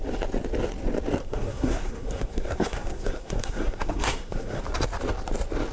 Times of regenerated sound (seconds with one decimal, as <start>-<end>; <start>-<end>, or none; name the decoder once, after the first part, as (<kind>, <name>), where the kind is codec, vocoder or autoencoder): 1.2-4.6 (codec, SNAC)